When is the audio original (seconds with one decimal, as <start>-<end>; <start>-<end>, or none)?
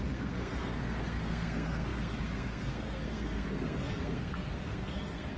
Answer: none